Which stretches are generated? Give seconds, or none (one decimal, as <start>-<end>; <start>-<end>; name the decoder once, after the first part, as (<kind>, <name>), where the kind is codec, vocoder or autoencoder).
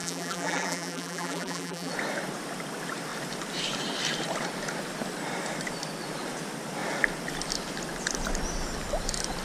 0.0-1.9 (vocoder, BigVGAN v2)